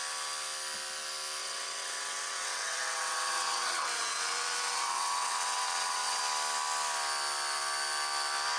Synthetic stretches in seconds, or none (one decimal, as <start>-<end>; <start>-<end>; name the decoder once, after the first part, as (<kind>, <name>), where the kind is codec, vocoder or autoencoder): 1.4-6.2 (vocoder, WaveNeXt)